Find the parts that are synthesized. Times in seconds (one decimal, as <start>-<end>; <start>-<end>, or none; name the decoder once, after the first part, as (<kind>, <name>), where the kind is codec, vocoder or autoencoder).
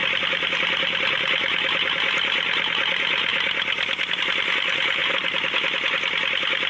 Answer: none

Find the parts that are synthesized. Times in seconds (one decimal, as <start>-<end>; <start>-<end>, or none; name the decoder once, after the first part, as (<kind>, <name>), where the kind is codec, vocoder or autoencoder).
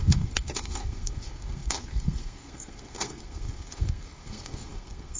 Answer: 0.0-5.2 (codec, SNAC)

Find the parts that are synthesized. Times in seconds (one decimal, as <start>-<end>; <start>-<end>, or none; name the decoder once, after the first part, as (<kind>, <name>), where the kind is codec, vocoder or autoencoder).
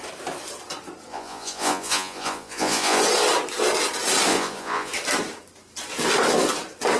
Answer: 1.1-3.0 (vocoder, Vocos); 4.3-4.9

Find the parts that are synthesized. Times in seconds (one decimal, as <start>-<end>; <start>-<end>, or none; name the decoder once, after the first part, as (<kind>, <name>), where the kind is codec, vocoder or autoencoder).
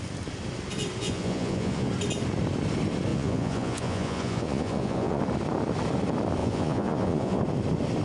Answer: 1.0-1.9 (vocoder, Vocos); 3.1-5.2; 6.4-7.4